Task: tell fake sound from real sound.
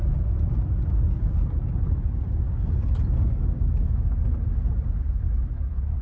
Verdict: real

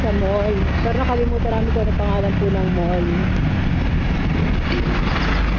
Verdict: real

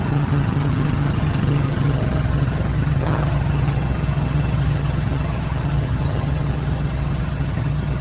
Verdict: fake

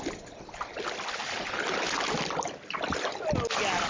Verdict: real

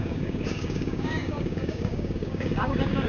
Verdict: fake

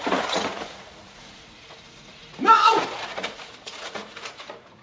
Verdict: fake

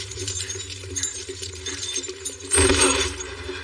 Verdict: fake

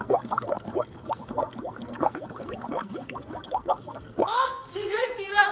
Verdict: fake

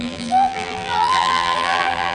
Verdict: fake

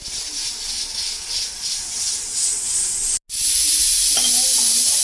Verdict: real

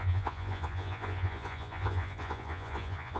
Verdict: fake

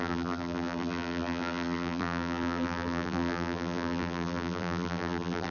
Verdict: fake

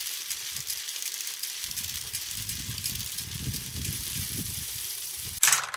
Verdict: fake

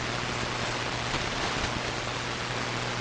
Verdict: real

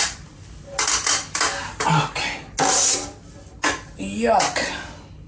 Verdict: real